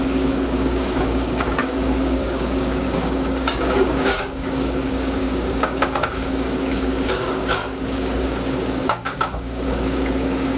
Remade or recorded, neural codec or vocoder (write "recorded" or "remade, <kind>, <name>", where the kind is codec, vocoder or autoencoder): remade, codec, DAC